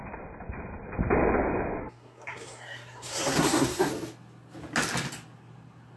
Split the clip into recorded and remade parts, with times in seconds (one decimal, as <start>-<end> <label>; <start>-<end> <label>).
0.0-1.8 recorded; 1.8-3.9 remade; 3.9-6.0 recorded